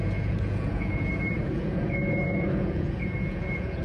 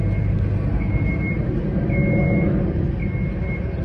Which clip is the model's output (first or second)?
first